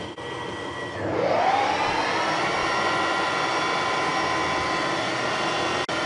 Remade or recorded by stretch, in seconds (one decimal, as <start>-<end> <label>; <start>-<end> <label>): 0.0-2.6 recorded; 2.6-3.6 remade; 3.6-6.1 recorded